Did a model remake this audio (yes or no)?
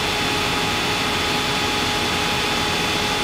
no